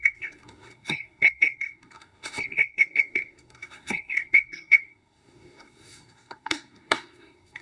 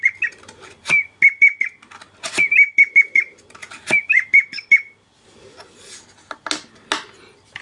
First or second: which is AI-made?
first